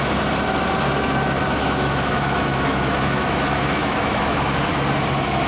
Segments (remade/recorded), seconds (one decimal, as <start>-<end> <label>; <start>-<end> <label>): 0.0-1.4 recorded; 1.4-4.7 remade; 4.7-5.5 recorded